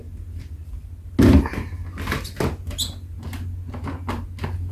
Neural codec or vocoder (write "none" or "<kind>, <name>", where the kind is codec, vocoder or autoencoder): none